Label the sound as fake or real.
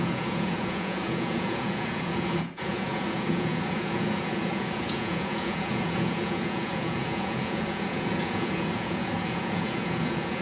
fake